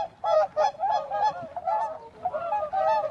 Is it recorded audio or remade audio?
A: recorded